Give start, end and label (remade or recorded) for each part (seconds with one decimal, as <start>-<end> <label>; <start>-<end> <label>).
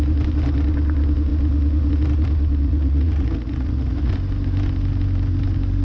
0.0-2.6 recorded; 2.6-4.1 remade; 4.1-5.8 recorded